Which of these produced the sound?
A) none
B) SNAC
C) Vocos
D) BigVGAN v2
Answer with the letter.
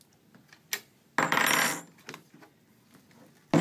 A